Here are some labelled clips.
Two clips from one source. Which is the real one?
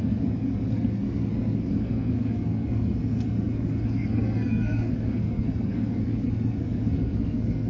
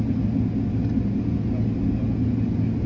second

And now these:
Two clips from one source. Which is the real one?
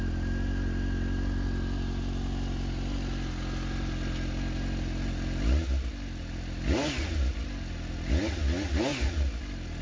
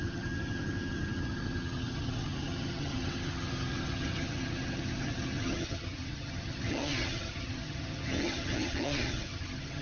first